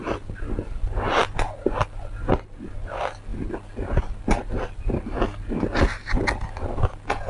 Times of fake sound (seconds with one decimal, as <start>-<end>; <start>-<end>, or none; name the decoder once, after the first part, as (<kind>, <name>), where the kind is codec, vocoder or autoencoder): none